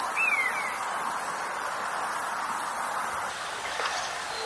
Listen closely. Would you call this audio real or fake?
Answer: fake